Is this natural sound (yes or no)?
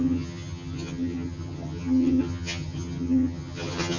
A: no